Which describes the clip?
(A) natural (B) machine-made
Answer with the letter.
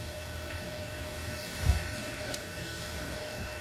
B